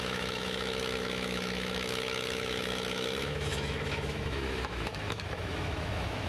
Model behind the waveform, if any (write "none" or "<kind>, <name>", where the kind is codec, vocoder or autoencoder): autoencoder, DAC-VAE